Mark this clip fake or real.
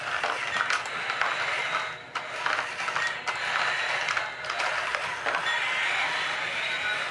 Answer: real